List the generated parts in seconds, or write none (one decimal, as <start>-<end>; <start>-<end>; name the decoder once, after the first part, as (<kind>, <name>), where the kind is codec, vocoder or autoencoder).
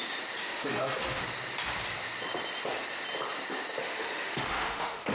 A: 0.4-1.2 (autoencoder, DAC-VAE); 3.8-5.1